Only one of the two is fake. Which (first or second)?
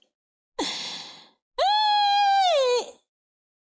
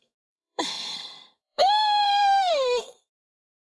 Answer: second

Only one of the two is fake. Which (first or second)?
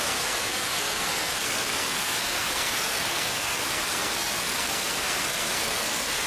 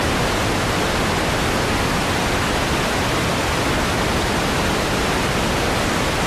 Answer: first